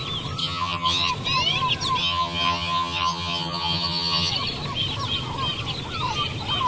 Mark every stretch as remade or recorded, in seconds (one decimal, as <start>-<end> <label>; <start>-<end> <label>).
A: 0.0-0.4 recorded; 0.4-1.1 remade; 1.1-2.0 recorded; 2.0-4.3 remade; 4.3-6.7 recorded